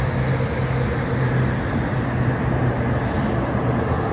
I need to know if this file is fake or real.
real